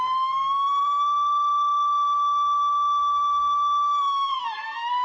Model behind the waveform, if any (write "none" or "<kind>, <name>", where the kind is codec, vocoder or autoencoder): none